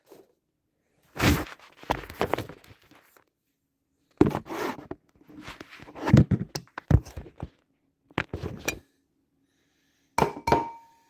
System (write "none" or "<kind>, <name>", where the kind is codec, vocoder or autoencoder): none